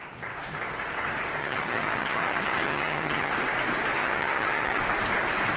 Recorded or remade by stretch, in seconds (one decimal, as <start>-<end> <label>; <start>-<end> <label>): 0.0-1.4 recorded; 1.4-3.3 remade; 3.3-4.0 recorded; 4.0-4.8 remade; 4.8-5.6 recorded